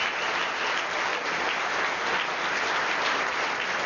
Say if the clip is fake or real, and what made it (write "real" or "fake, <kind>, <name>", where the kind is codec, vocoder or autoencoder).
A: real